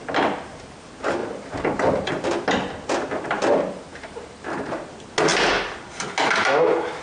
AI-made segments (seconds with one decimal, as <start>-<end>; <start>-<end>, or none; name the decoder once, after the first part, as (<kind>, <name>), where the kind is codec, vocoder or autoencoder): 1.2-2.1 (vocoder, BigVGAN v2); 3.9-4.8